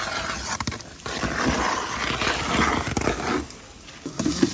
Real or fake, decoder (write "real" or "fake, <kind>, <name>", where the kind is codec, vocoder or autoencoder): real